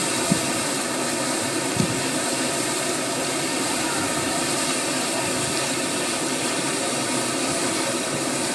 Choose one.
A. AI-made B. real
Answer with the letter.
A